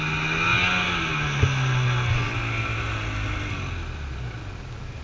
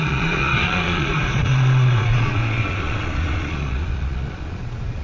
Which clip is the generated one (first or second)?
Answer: second